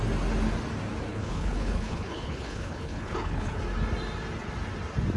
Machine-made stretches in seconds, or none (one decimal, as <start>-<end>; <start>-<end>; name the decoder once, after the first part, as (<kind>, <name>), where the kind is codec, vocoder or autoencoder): 1.1-3.6 (codec, HILCodec)